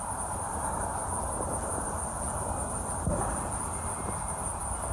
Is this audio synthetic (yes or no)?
no